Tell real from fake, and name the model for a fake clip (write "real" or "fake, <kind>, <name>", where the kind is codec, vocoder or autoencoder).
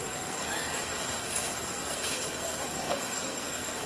fake, codec, SNAC